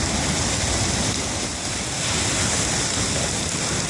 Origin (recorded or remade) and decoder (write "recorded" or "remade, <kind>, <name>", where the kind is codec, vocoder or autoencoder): recorded